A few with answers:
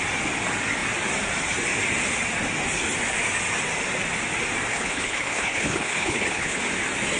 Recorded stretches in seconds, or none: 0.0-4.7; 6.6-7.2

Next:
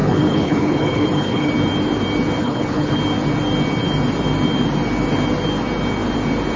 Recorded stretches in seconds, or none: 1.5-2.4; 3.0-6.6

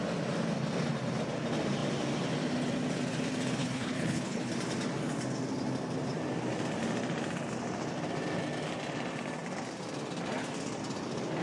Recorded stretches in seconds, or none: 0.0-3.6; 4.5-11.4

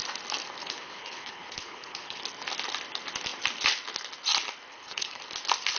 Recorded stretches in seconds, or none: 0.0-0.6; 2.2-4.7; 5.2-5.8

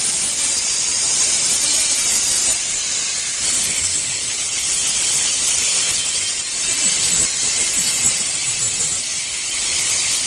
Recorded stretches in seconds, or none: 0.0-3.3; 6.2-9.2

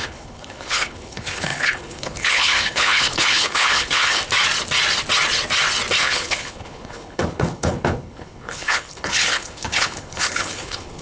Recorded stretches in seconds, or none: 4.2-6.0

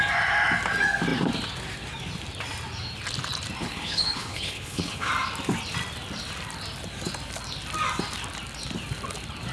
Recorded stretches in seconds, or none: 0.0-3.6; 5.1-9.5